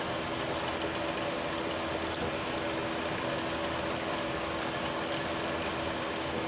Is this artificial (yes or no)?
no